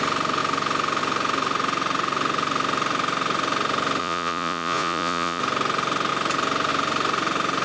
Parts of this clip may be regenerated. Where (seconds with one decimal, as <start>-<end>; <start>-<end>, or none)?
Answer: 4.0-5.4